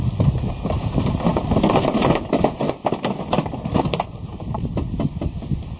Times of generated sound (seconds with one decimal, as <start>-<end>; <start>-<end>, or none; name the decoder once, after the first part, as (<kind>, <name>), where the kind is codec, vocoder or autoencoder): none